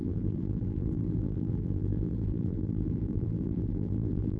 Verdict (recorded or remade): remade